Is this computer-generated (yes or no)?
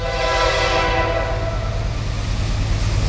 no